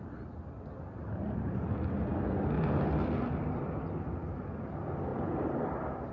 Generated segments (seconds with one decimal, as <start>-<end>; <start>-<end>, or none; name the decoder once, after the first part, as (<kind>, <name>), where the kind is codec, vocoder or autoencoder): 5.1-6.1 (vocoder, BigVGAN v2)